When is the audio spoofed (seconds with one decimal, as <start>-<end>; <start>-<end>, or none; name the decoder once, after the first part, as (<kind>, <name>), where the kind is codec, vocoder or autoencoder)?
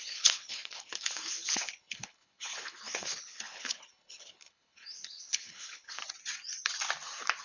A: 0.0-6.0 (codec, HILCodec)